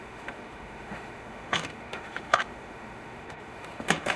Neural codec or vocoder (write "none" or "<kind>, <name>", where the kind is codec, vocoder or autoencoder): autoencoder, DAC-VAE